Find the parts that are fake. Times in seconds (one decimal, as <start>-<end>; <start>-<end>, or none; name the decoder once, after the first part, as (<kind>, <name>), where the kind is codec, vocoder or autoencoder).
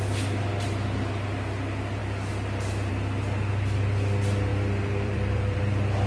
4.5-5.6 (vocoder, BigVGAN v2)